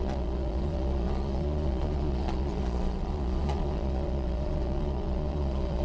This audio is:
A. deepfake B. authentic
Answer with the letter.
A